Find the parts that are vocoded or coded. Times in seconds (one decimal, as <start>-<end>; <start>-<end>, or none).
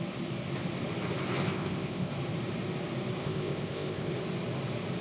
1.4-2.1; 3.2-4.1